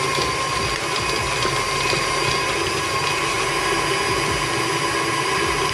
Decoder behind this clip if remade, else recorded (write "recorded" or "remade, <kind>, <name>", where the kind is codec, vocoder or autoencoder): recorded